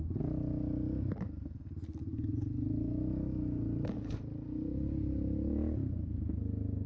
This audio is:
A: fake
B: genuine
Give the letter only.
B